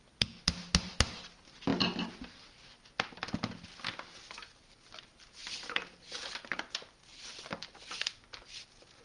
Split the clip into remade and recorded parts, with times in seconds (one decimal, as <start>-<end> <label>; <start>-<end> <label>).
0.0-9.0 recorded